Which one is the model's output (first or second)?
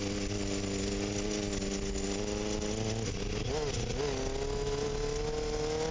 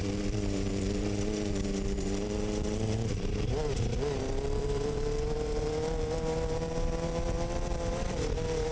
second